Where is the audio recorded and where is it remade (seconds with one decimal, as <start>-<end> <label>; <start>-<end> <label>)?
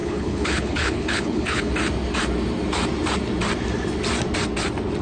0.0-1.7 remade; 1.7-5.0 recorded